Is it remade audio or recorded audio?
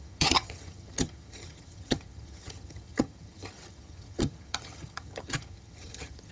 remade